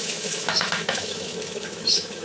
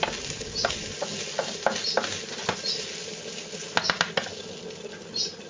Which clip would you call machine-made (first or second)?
first